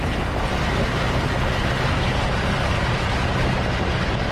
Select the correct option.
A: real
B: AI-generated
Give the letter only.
A